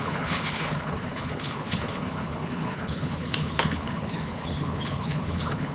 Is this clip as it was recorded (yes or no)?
no